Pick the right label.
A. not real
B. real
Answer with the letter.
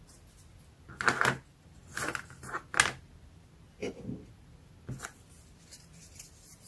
B